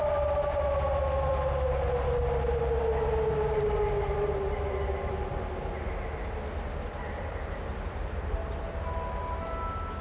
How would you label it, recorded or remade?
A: recorded